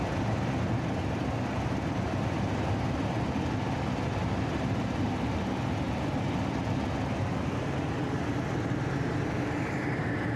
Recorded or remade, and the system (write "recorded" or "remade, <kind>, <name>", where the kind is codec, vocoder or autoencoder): recorded